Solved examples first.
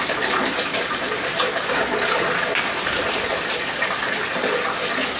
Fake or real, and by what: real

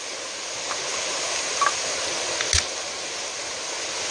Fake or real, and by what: real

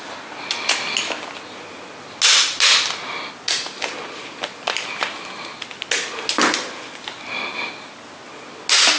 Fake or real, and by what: real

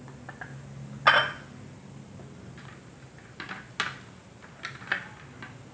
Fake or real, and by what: real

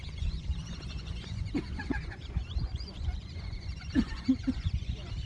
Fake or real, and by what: fake, vocoder, Vocos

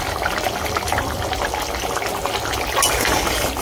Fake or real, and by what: real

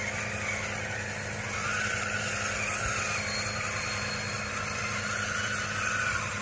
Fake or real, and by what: real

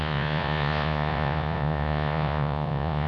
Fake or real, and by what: fake, vocoder, Vocos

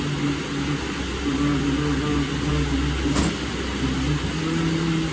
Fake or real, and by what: real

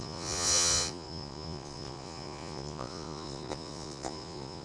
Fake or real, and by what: fake, vocoder, Vocos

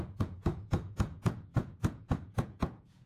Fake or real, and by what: fake, vocoder, Vocos